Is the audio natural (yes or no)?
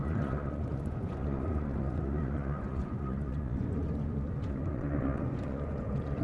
no